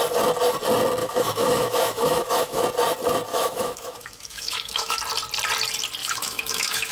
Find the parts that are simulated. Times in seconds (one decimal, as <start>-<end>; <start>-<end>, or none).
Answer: 1.0-2.6; 3.3-5.0; 6.0-6.9